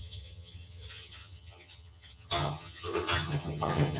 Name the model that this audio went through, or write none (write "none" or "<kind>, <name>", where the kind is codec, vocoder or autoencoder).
vocoder, HiFi-GAN